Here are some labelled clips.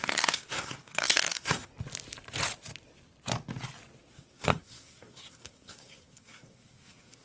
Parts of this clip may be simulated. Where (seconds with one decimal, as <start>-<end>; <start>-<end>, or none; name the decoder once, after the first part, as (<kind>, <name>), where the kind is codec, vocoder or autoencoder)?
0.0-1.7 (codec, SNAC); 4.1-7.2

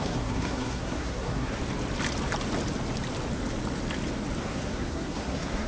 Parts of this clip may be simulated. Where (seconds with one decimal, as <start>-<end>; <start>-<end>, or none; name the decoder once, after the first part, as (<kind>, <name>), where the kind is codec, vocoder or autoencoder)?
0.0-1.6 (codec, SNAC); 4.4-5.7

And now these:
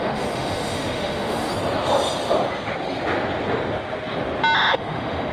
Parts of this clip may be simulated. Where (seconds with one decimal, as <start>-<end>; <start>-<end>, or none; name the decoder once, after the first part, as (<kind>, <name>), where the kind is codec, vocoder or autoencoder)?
0.0-1.5 (autoencoder, DAC-VAE); 4.7-5.3

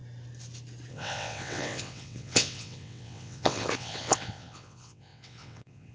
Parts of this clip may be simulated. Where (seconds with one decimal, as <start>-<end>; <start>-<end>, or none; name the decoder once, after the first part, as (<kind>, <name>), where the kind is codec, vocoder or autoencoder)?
0.9-5.9 (vocoder, WaveNeXt)

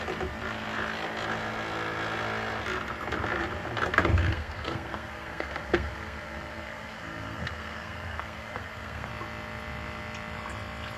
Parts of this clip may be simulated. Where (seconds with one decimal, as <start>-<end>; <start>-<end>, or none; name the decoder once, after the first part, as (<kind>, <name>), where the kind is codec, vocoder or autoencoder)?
4.1-9.1 (codec, SNAC)

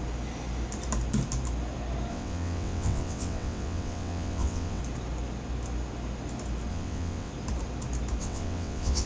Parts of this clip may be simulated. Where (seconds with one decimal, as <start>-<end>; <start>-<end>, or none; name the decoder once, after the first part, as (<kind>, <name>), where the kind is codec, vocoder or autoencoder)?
2.1-4.8 (vocoder, WaveNeXt); 6.7-7.3; 8.2-9.1

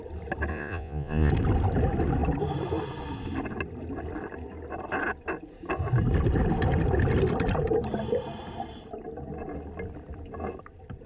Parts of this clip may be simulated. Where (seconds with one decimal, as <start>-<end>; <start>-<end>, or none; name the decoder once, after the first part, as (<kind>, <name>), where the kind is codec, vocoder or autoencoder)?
0.5-1.3 (vocoder, Vocos)

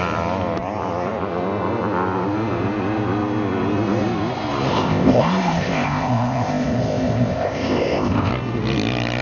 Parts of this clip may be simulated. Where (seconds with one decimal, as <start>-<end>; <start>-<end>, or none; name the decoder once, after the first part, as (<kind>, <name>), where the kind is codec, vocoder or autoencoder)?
4.7-8.3 (codec, ZipCodec)